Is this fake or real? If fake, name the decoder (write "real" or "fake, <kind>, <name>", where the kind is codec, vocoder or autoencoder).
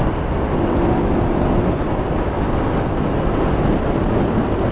real